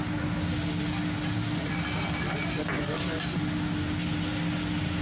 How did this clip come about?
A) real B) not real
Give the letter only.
A